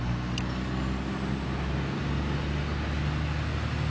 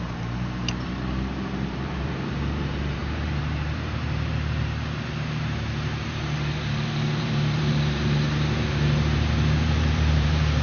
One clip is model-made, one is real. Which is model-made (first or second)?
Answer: second